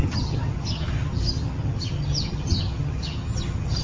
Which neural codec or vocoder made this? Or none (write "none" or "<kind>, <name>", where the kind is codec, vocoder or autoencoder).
vocoder, HiFi-GAN